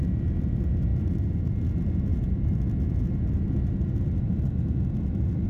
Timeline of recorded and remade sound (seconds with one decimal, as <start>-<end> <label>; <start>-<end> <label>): 0.0-0.9 recorded; 0.9-1.7 remade; 1.7-2.1 recorded; 2.1-2.6 remade; 2.6-5.5 recorded